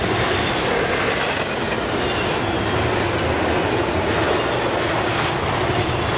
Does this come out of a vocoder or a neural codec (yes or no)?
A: no